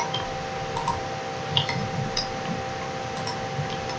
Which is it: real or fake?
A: real